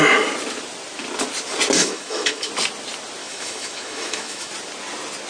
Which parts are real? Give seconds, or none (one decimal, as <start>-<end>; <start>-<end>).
0.0-1.8; 2.5-3.2; 4.5-5.3